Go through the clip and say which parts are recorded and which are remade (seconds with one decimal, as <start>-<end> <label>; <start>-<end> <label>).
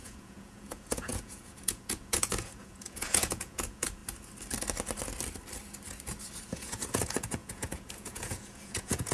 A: 0.0-4.0 remade; 4.0-6.5 recorded; 6.5-9.1 remade